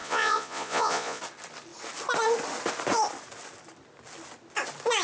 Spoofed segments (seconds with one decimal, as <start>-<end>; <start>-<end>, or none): 0.0-1.2